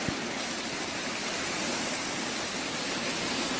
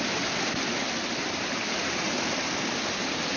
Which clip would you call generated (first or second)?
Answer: second